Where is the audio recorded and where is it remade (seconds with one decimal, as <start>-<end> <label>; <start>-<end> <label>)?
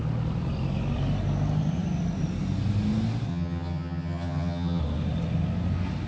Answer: 0.0-3.3 recorded; 3.3-4.8 remade; 4.8-6.1 recorded